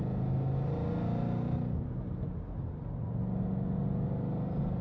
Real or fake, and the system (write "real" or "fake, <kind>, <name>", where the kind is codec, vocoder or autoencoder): real